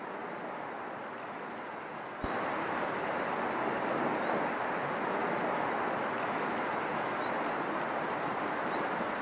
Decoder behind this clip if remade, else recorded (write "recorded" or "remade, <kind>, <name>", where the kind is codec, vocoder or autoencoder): recorded